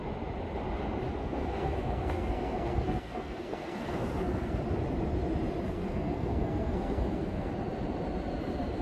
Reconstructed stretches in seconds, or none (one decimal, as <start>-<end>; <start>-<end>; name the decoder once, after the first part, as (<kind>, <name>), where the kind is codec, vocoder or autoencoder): 1.2-4.6 (codec, SNAC); 5.7-7.5